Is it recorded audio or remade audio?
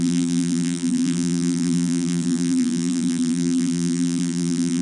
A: remade